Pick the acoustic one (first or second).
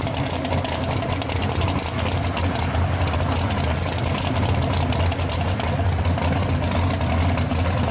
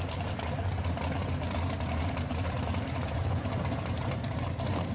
first